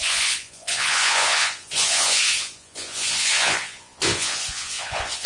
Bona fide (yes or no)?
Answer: no